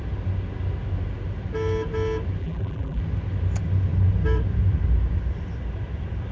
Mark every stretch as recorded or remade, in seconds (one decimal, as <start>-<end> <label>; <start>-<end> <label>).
0.0-2.4 recorded; 2.4-3.0 remade; 3.0-6.3 recorded